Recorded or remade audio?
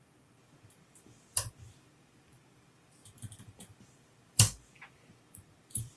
remade